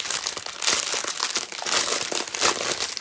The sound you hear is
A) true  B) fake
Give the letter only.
A